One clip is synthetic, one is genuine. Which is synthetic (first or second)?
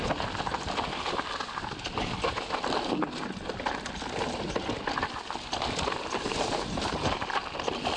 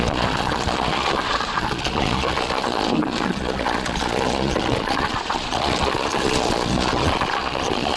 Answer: second